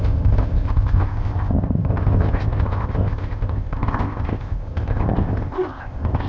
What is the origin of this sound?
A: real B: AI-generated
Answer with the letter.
B